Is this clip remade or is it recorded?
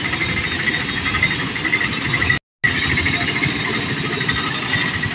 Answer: recorded